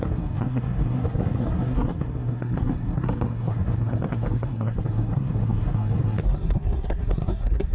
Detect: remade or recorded remade